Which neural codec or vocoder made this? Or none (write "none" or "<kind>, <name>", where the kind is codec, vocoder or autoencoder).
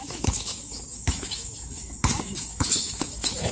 autoencoder, DAC-VAE